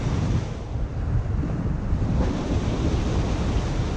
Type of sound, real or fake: real